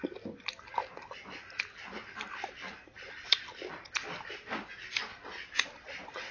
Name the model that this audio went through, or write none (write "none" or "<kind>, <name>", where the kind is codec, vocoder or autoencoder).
none